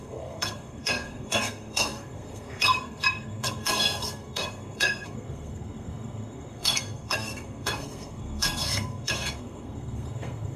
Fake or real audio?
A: fake